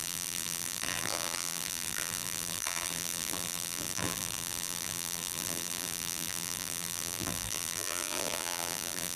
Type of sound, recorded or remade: remade